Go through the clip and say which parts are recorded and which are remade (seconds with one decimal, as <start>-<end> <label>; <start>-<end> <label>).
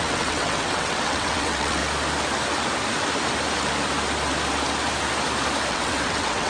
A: 0.0-1.8 remade; 1.8-5.7 recorded; 5.7-6.5 remade